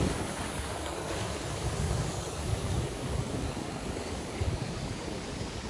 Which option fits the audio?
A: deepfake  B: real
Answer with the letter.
A